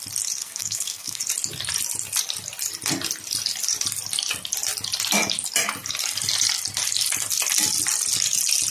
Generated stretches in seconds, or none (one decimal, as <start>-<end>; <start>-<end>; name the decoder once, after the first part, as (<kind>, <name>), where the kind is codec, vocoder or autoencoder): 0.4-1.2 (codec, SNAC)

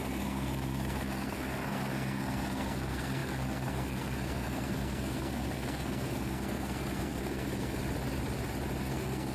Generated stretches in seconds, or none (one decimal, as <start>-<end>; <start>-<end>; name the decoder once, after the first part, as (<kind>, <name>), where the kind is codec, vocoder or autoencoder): 0.0-7.8 (codec, SNAC); 8.8-9.3

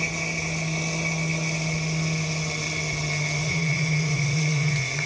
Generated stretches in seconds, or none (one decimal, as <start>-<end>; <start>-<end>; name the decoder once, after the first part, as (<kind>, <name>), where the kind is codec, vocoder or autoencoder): 3.4-5.1 (vocoder, Vocos)

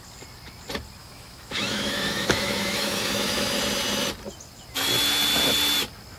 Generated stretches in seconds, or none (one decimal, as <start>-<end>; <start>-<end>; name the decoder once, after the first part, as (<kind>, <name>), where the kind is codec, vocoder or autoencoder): 1.0-3.6 (autoencoder, DAC-VAE)

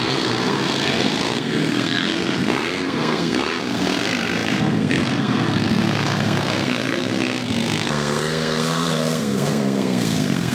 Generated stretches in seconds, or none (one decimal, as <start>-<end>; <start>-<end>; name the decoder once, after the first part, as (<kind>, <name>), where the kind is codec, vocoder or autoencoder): 0.0-10.5 (codec, SNAC)

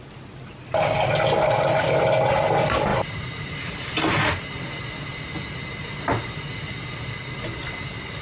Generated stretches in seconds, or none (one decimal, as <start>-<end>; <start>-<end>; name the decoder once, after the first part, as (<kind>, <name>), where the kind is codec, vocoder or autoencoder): none

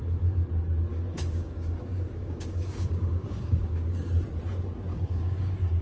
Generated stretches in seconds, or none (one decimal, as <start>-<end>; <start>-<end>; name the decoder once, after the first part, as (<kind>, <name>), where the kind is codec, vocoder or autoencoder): 0.9-4.1 (codec, DAC); 4.9-5.8